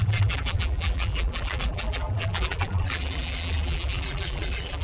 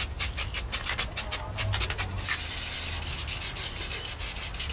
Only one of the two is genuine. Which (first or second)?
second